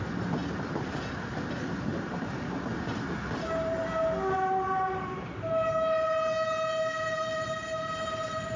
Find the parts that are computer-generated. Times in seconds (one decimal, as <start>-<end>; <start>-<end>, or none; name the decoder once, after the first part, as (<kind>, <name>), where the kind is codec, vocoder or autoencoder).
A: none